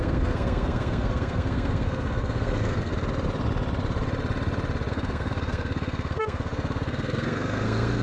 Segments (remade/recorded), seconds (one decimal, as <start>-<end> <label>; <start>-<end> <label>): 0.0-2.9 remade; 2.9-4.9 recorded; 4.9-8.0 remade